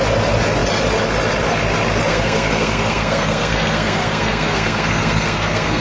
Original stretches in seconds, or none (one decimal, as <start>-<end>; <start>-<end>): 0.0-2.1